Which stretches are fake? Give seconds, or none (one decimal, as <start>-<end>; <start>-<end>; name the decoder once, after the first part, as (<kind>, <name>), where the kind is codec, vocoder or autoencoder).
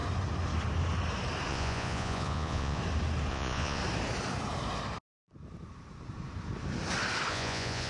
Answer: 1.5-2.8 (vocoder, Vocos); 3.3-3.8; 7.3-7.9